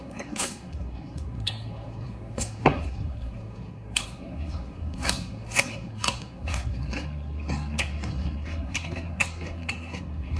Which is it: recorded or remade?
remade